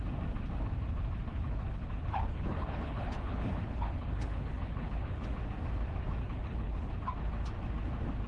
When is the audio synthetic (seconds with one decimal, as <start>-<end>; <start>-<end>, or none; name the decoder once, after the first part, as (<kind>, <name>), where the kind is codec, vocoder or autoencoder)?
1.3-5.4 (codec, HILCodec); 6.2-6.9